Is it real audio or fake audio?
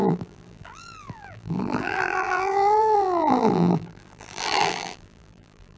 fake